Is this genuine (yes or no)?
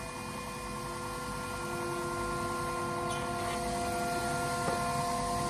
yes